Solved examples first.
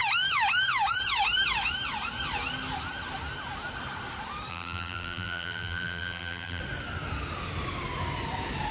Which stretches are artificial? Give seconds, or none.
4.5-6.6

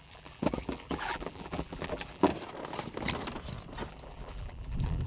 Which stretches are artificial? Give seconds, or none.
0.0-2.3; 3.9-5.1

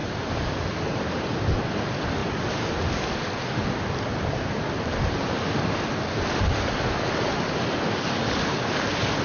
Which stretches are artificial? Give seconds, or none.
0.0-1.1